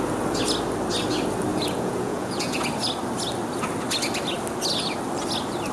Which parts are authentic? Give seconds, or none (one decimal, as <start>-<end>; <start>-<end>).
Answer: 0.0-1.5; 2.6-5.7